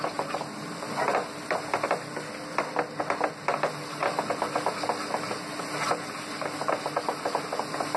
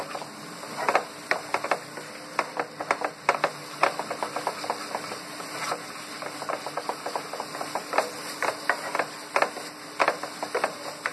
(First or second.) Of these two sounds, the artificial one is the second